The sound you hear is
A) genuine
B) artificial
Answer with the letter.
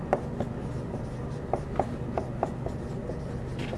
A